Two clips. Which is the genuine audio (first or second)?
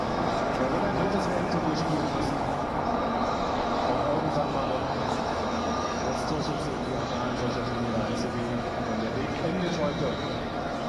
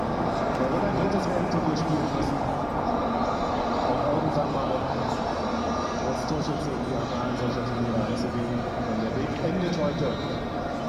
second